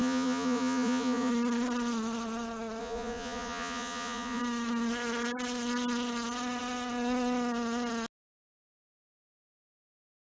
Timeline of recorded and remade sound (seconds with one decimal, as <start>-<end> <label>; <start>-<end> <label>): 0.0-1.3 remade; 1.3-2.8 recorded; 2.8-4.4 remade; 4.4-10.2 recorded